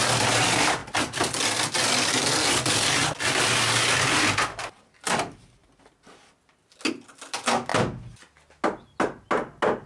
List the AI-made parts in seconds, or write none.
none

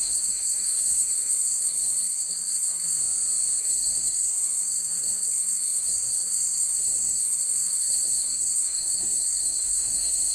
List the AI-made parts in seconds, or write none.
0.0-3.0; 3.6-10.3

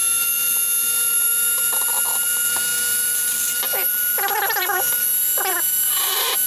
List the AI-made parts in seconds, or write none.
0.0-6.5

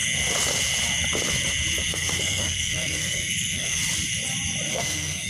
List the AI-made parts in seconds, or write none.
1.9-3.8; 4.7-5.3

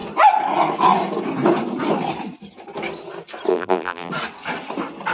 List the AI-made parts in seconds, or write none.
3.5-4.1